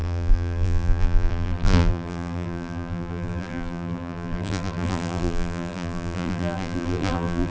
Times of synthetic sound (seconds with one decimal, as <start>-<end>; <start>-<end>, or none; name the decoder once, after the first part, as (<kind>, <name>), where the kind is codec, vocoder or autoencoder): 0.0-7.5 (vocoder, BigVGAN v2)